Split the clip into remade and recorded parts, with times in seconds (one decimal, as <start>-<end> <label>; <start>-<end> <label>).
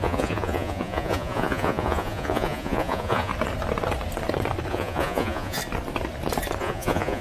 0.0-3.3 remade; 3.3-4.7 recorded; 4.7-5.6 remade; 5.6-6.6 recorded; 6.6-7.2 remade